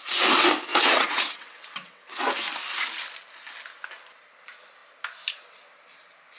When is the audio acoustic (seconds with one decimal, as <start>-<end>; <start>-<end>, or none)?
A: 0.0-0.7; 2.2-6.4